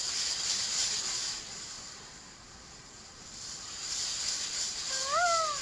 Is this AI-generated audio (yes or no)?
no